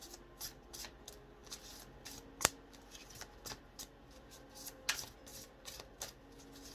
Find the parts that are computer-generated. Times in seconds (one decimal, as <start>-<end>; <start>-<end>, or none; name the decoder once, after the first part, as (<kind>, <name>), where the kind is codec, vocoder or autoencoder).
5.3-6.2 (vocoder, BigVGAN v2)